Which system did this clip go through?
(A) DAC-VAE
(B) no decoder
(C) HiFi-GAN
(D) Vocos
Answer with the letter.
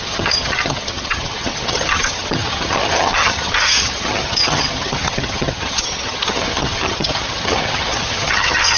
C